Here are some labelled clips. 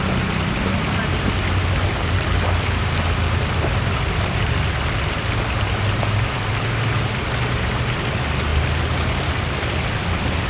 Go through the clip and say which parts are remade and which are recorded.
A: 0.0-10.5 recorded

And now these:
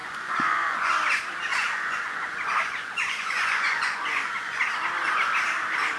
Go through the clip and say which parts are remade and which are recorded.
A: 0.0-0.9 remade; 0.9-1.5 recorded; 1.5-4.6 remade; 4.6-6.0 recorded

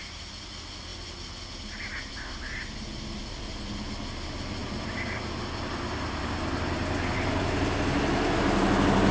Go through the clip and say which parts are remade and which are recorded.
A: 0.0-9.1 recorded

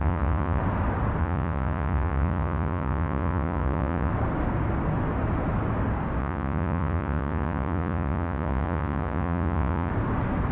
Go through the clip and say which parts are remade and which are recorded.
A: 0.0-0.6 remade; 0.6-1.2 recorded; 1.2-4.1 remade; 4.1-6.2 recorded; 6.2-9.9 remade; 9.9-10.5 recorded